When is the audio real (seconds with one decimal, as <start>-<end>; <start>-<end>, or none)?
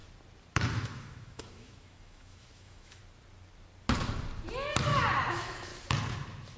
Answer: 0.0-0.7; 3.0-5.3; 5.7-6.6